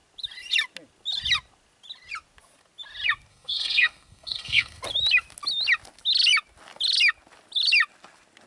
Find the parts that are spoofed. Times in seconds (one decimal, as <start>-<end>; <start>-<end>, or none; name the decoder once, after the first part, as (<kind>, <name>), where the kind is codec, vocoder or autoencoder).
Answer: 3.3-4.8 (codec, SNAC)